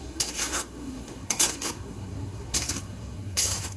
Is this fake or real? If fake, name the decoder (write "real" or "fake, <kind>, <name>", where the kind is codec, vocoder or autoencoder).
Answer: fake, codec, SNAC